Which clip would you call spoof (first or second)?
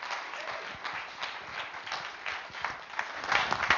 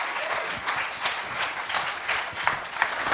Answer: second